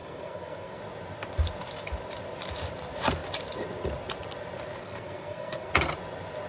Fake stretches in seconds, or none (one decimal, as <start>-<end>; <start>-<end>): 0.0-0.8; 4.8-5.7